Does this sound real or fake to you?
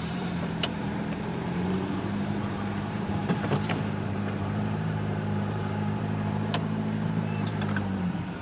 fake